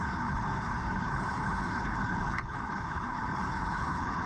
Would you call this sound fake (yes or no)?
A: yes